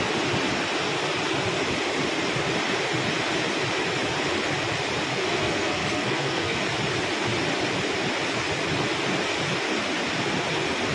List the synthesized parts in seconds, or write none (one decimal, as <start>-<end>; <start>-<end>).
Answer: 5.1-6.6

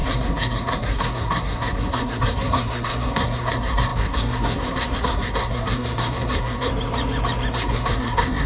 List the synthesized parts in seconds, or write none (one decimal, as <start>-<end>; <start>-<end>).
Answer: 0.0-6.7; 7.5-8.5

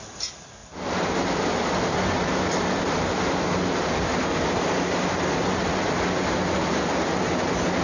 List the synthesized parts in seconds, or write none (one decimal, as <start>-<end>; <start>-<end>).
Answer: none